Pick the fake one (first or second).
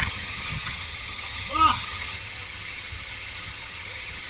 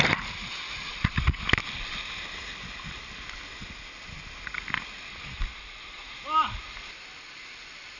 first